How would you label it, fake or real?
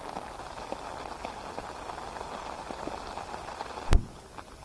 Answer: real